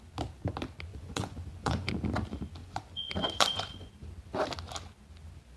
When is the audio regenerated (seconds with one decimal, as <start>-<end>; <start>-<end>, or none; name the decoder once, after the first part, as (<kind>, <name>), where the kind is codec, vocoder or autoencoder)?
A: 0.9-1.9 (vocoder, Vocos); 2.6-3.9